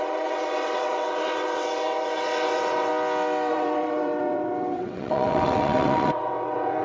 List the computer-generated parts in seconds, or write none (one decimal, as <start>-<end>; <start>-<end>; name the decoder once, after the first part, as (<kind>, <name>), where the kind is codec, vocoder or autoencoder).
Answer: 0.0-2.9 (vocoder, WaveNeXt); 3.5-6.8

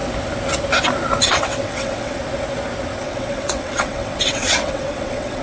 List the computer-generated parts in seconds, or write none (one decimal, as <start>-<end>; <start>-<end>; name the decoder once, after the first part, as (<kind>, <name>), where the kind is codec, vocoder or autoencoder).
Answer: 1.2-2.2 (vocoder, WaveNeXt); 3.0-5.4

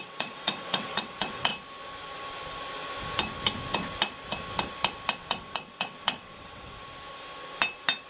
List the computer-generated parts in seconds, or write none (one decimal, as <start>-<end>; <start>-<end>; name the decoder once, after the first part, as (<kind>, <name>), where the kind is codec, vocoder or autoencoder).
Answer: 0.0-1.5 (vocoder, WaveNeXt); 5.2-6.8

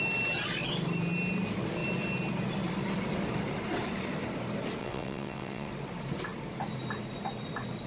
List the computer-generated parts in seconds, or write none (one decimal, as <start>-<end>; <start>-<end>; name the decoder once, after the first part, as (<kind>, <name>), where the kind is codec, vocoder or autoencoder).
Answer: 4.8-5.7 (vocoder, WaveNeXt)

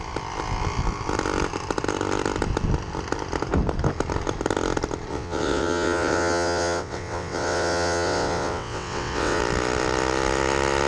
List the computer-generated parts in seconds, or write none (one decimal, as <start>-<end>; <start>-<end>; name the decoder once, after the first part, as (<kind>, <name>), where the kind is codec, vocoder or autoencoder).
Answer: 5.1-9.4 (vocoder, WaveNeXt)

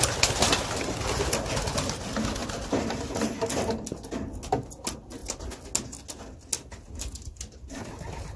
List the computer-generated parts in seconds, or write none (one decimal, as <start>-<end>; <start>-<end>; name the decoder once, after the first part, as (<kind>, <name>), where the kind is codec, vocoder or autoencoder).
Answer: none

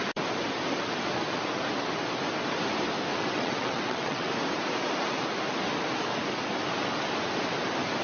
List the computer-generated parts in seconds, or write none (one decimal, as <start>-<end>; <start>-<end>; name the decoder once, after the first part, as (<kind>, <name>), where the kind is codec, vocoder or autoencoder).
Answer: 3.1-4.3 (vocoder, WaveNeXt)

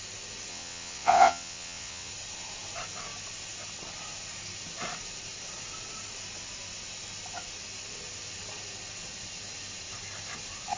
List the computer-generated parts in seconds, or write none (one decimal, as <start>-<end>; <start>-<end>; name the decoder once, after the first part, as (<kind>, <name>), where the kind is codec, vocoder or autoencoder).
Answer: 0.5-2.1 (vocoder, WaveNeXt)